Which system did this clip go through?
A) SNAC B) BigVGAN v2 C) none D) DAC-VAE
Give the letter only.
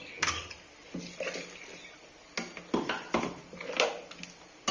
C